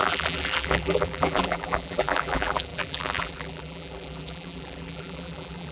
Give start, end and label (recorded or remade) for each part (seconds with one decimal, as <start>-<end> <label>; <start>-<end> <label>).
0.0-5.7 remade